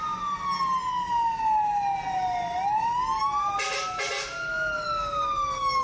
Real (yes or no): yes